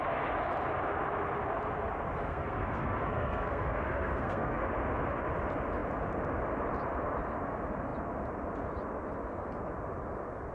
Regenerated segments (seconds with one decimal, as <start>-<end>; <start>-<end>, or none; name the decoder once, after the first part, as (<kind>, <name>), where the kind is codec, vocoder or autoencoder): 2.3-4.6 (codec, SNAC)